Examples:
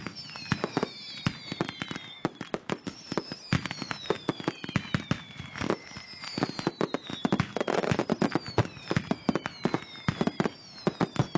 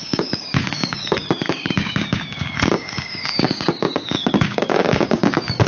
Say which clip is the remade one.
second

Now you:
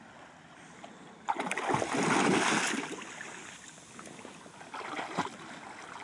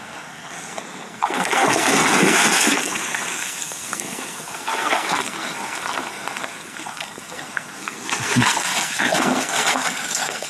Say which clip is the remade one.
second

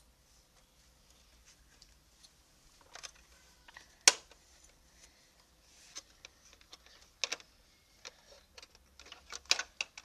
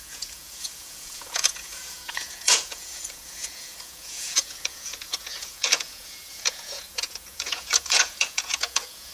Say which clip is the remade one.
second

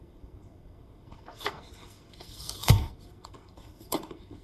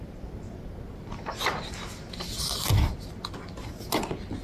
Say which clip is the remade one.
first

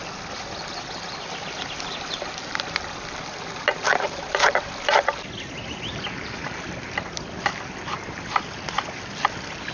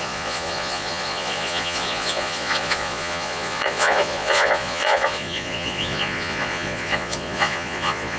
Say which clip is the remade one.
second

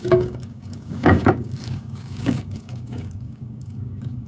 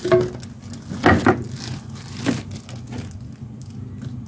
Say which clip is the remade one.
first